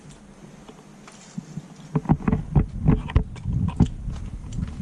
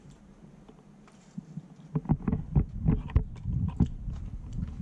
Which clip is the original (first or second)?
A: first